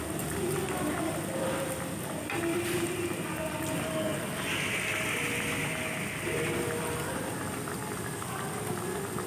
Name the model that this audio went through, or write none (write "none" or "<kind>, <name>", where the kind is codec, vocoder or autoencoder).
none